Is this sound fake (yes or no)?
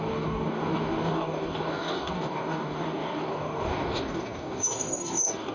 yes